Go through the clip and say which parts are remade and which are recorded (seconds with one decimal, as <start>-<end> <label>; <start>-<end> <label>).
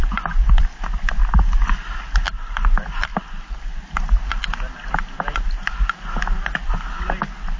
0.0-7.6 recorded